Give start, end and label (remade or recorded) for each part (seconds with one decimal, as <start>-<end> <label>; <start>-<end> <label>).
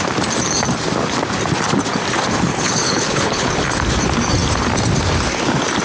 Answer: 0.0-2.5 recorded; 2.5-3.5 remade; 3.5-5.8 recorded